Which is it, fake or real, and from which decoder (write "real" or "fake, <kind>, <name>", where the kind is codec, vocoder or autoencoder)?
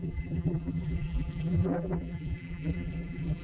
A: fake, vocoder, BigVGAN v2